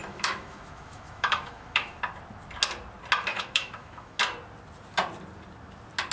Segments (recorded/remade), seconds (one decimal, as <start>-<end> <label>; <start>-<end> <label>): 0.0-2.0 remade; 2.0-3.3 recorded; 3.3-4.2 remade; 4.2-6.1 recorded

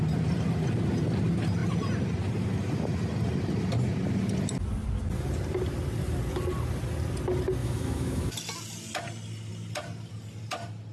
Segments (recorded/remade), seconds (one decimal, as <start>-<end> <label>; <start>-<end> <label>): 0.0-7.6 recorded; 7.6-8.3 remade; 8.3-10.9 recorded

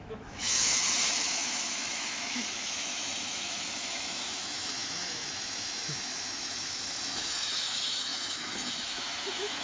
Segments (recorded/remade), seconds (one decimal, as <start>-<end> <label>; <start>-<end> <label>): 0.0-9.6 remade

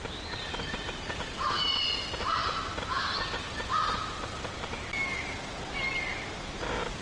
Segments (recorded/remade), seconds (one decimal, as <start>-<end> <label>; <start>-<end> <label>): 0.0-7.0 recorded